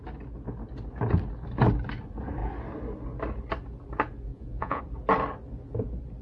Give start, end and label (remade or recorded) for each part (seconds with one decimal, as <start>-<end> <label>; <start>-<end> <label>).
0.0-4.3 recorded; 4.3-4.8 remade; 4.8-6.2 recorded